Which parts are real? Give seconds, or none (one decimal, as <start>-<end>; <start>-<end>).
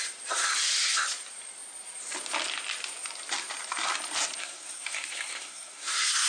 0.0-4.4